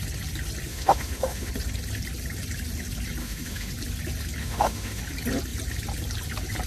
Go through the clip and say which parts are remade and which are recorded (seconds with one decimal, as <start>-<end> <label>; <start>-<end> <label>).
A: 0.0-0.7 recorded; 0.7-1.5 remade; 1.5-3.2 recorded; 3.2-3.7 remade; 3.7-4.4 recorded; 4.4-5.0 remade; 5.0-6.7 recorded